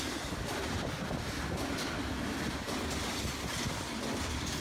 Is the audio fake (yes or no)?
no